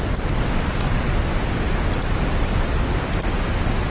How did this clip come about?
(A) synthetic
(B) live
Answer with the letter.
B